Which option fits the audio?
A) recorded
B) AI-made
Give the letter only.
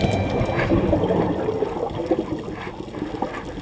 A